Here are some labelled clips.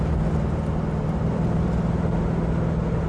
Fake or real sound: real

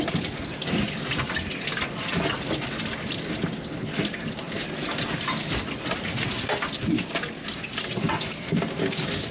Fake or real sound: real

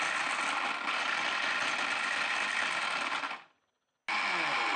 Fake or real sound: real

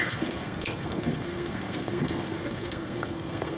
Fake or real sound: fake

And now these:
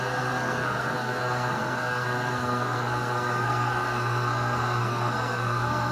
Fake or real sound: fake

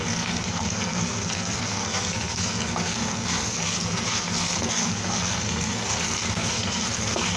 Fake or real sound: fake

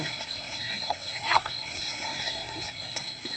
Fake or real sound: fake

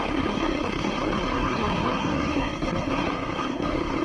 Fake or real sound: fake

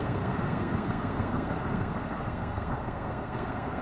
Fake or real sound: fake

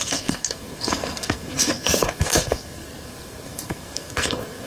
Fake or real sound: fake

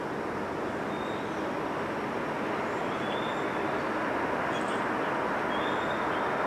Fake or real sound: real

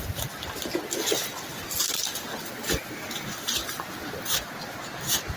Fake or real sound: real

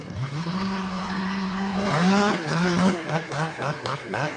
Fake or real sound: fake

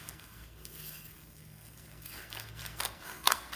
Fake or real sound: fake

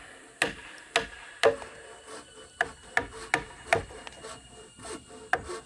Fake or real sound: real